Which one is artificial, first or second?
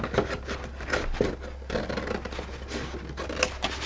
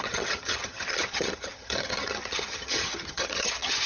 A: second